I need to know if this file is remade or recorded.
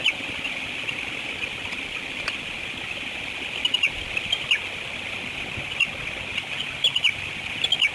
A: recorded